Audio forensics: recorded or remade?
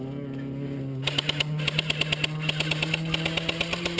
recorded